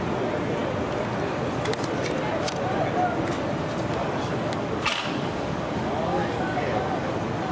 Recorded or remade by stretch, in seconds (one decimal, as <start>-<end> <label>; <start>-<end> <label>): 0.0-4.0 recorded; 4.0-7.1 remade; 7.1-7.5 recorded